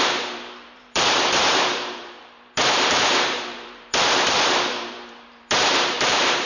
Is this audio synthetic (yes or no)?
yes